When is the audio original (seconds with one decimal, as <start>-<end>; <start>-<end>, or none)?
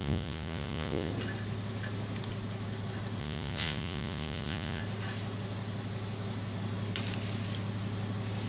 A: 1.1-3.2; 4.8-8.5